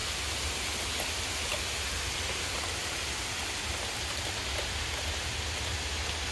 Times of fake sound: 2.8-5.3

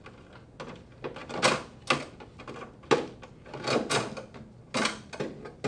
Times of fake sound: none

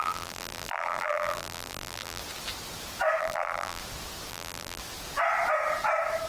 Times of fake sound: 0.0-2.2; 3.2-3.8; 4.3-4.8

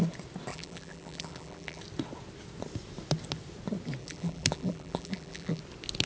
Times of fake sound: 0.5-1.8; 4.0-5.6

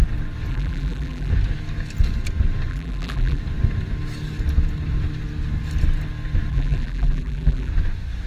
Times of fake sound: 0.5-1.3; 2.7-3.4; 6.5-7.7

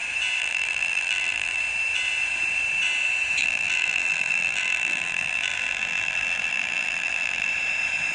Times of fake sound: 0.4-1.6; 3.4-7.5